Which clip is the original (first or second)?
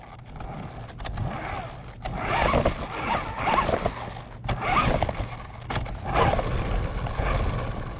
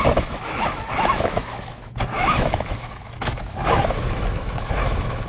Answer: first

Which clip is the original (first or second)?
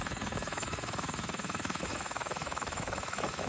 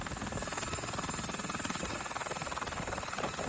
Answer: second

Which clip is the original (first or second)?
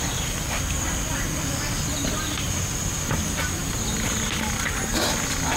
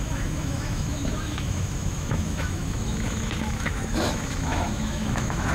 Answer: first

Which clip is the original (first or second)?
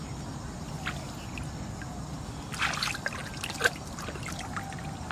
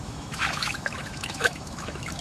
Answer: first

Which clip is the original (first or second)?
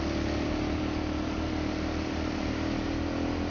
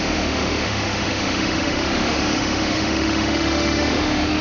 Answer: first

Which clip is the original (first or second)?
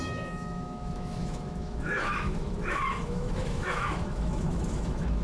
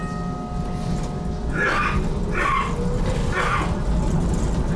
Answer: second